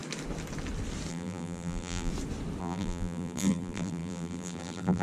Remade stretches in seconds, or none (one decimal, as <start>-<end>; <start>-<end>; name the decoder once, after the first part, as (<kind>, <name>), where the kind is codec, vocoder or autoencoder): 1.1-2.1 (vocoder, BigVGAN v2); 2.6-5.0